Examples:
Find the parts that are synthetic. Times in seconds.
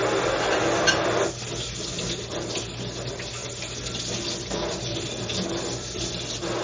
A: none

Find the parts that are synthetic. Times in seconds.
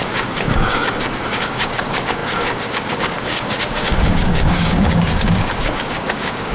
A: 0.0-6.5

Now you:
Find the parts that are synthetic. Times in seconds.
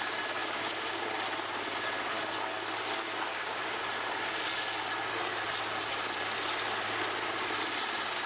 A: 0.4-1.0; 3.3-3.8